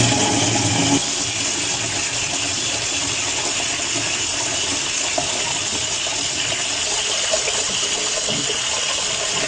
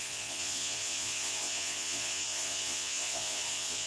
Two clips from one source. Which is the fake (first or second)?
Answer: second